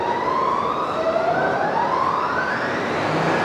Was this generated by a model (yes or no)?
no